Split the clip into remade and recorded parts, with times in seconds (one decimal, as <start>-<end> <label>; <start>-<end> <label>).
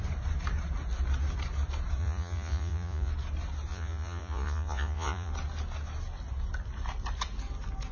0.0-2.0 recorded; 2.0-3.1 remade; 3.1-3.7 recorded; 3.7-5.3 remade; 5.3-7.9 recorded